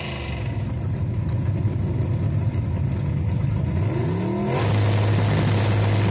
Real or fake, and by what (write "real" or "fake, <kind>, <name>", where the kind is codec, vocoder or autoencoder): real